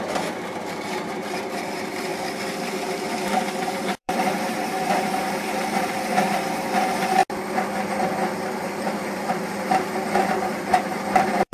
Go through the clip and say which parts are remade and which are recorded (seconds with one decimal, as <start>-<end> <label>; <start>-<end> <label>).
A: 0.0-2.1 remade; 2.1-3.7 recorded; 3.7-7.2 remade; 7.2-8.6 recorded; 8.6-11.5 remade